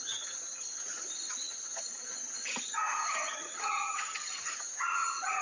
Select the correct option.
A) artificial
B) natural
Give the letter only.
A